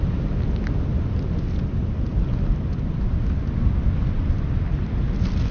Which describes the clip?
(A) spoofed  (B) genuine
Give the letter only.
B